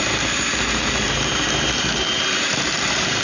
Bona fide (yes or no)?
no